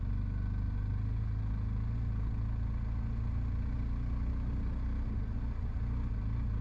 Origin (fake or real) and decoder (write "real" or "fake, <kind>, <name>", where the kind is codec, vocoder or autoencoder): real